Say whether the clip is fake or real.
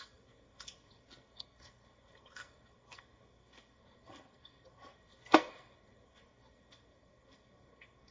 fake